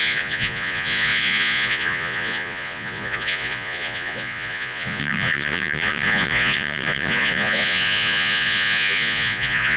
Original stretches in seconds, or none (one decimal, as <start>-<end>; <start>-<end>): none